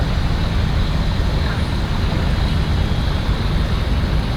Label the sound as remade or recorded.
recorded